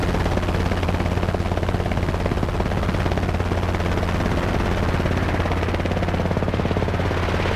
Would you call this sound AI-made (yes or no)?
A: no